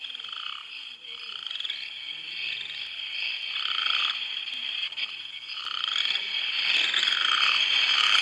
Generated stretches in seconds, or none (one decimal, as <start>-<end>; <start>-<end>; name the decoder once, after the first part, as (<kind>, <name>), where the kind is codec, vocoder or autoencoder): none